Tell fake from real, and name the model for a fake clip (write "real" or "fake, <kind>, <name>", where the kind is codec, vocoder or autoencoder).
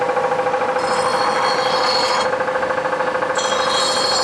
real